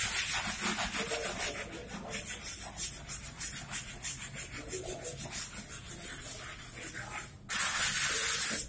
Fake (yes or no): no